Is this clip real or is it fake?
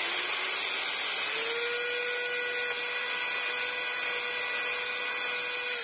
real